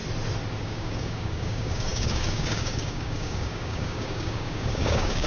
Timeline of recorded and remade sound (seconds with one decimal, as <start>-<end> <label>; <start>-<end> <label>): 0.0-0.6 recorded; 0.6-5.3 remade